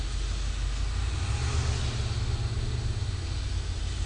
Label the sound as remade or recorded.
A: recorded